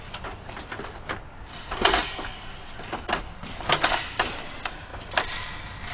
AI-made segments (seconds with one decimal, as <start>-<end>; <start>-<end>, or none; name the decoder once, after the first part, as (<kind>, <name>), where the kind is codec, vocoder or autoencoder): none